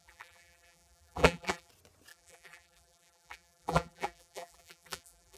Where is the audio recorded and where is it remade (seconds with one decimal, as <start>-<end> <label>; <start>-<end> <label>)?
0.0-1.7 remade; 1.7-2.1 recorded; 2.1-5.4 remade